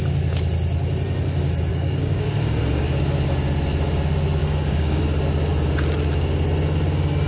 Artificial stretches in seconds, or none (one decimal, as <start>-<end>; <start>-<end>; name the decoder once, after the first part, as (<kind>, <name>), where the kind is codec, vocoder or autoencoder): 1.7-2.6 (codec, DAC); 4.4-5.0